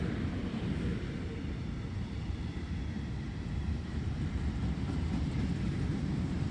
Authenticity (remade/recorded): remade